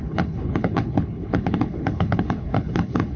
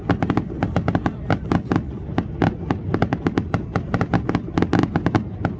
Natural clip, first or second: second